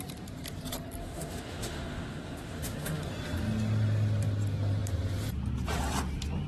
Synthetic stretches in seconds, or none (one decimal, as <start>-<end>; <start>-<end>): 1.0-3.1